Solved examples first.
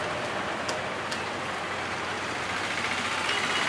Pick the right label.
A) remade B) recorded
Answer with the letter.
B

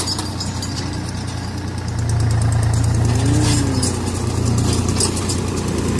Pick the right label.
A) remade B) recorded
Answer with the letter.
B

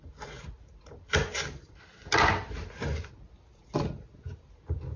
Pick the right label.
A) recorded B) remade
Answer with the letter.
A